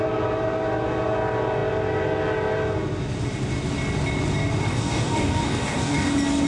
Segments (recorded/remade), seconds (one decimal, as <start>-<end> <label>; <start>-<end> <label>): 0.0-4.7 recorded; 4.7-6.1 remade; 6.1-6.5 recorded